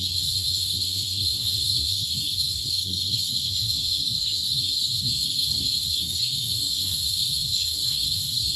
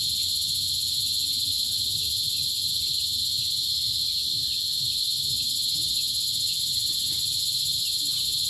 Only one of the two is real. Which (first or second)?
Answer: second